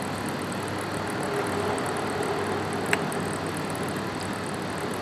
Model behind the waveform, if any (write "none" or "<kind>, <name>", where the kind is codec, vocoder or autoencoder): none